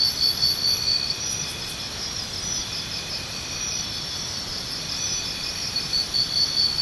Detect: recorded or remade recorded